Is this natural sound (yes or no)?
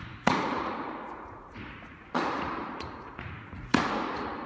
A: no